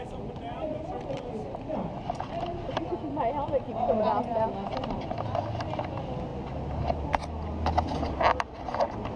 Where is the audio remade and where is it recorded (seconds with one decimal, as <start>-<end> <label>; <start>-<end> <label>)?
0.0-9.2 recorded